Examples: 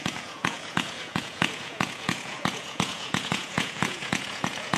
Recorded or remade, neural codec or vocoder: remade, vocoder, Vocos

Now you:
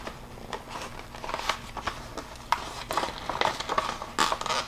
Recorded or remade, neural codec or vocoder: recorded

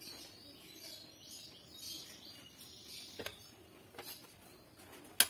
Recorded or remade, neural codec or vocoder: recorded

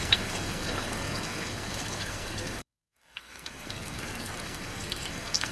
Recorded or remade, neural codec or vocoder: remade, codec, SNAC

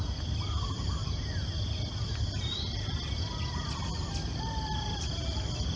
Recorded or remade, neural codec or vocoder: recorded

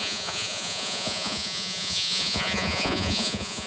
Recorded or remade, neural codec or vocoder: remade, vocoder, Vocos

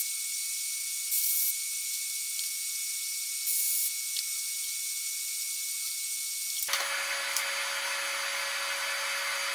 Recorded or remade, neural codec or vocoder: recorded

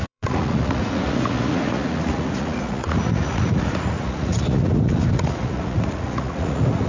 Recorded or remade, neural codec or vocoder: remade, vocoder, Vocos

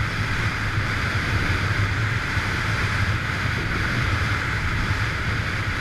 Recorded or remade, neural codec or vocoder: remade, vocoder, BigVGAN v2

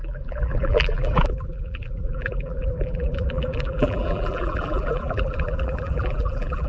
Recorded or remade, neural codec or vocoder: remade, vocoder, BigVGAN v2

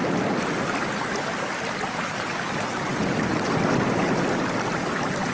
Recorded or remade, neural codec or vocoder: recorded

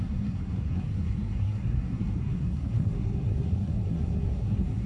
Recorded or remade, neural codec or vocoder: remade, codec, SNAC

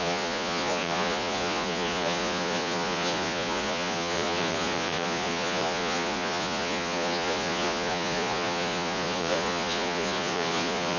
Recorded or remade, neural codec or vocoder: remade, vocoder, Vocos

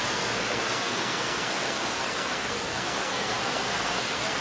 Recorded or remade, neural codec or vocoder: remade, codec, SNAC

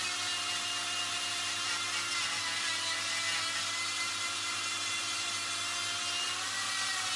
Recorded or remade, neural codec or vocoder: recorded